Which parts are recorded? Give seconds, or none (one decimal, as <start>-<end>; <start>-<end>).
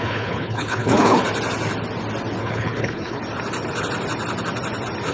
1.2-2.4; 3.2-5.1